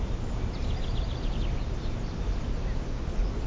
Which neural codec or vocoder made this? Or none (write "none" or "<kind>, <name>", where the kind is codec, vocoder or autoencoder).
none